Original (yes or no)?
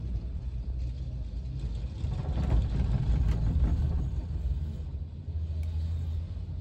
yes